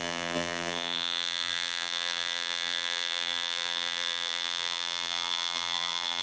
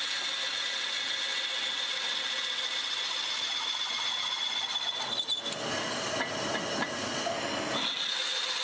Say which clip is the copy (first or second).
first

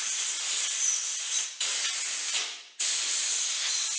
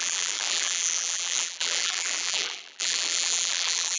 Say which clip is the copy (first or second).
second